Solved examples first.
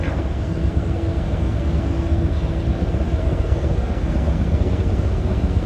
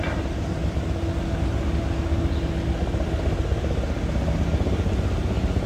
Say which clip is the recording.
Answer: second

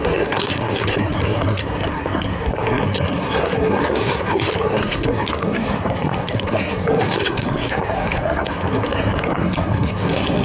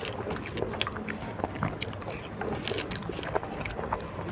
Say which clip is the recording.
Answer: second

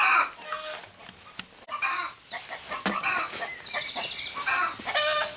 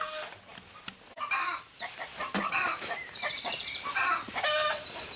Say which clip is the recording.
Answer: first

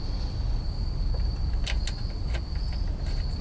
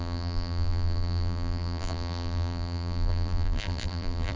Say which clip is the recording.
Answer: first